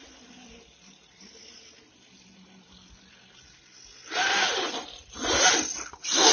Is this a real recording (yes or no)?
yes